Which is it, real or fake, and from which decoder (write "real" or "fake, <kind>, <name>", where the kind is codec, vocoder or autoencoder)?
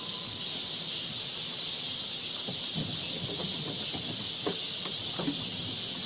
real